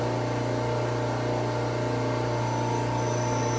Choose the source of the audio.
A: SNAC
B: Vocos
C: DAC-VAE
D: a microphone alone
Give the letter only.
D